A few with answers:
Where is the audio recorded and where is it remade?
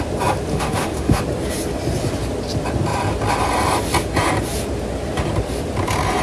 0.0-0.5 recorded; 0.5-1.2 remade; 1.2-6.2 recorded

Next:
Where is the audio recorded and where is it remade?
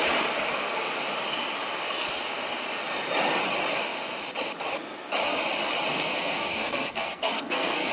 0.0-5.9 recorded; 5.9-7.9 remade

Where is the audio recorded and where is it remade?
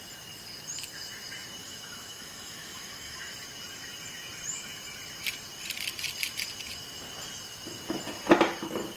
0.0-1.6 recorded; 1.6-3.3 remade; 3.3-9.0 recorded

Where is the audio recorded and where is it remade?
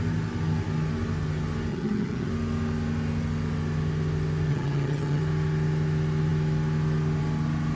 0.0-1.7 recorded; 1.7-2.3 remade; 2.3-4.5 recorded; 4.5-5.2 remade; 5.2-7.8 recorded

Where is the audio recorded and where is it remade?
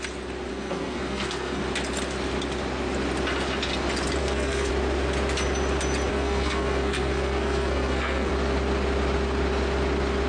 0.0-0.5 recorded; 0.5-1.6 remade; 1.6-4.2 recorded; 4.2-4.7 remade; 4.7-6.1 recorded; 6.1-8.3 remade; 8.3-10.3 recorded